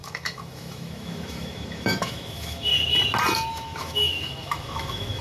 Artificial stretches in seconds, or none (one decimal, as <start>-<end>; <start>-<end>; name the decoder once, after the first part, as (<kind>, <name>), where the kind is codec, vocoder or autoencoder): 0.0-2.7 (autoencoder, DAC-VAE); 3.5-5.2